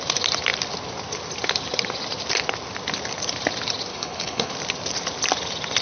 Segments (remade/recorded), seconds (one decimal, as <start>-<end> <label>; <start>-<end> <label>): 0.0-3.9 recorded; 3.9-4.5 remade; 4.5-5.8 recorded